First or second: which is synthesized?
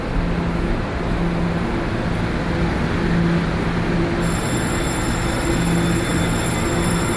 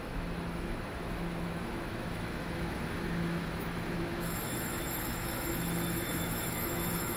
second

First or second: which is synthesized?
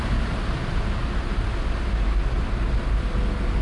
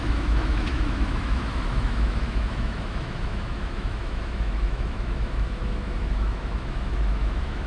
second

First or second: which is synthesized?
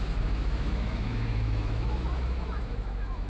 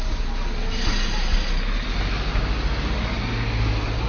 first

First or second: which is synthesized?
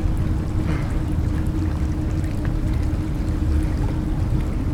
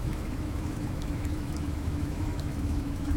second